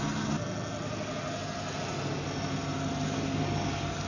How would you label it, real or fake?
real